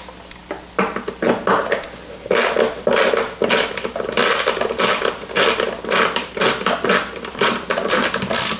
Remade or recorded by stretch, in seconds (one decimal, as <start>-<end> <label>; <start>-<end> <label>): 0.0-4.2 recorded; 4.2-8.6 remade